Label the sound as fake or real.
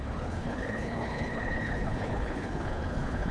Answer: fake